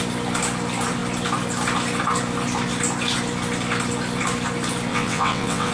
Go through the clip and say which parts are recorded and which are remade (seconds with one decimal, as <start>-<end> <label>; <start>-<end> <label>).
0.0-4.9 recorded; 4.9-5.7 remade